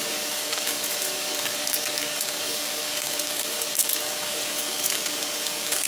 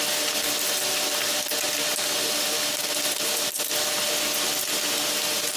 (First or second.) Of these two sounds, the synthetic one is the first